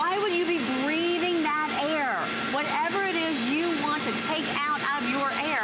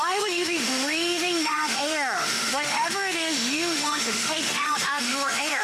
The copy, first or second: second